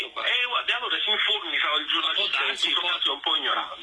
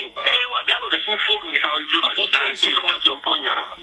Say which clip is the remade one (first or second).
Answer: second